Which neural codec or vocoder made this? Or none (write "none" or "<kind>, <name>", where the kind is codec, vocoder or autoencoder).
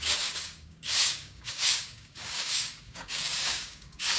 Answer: codec, DAC